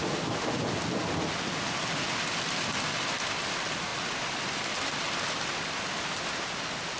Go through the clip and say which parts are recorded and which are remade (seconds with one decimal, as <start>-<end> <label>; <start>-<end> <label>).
0.0-7.0 recorded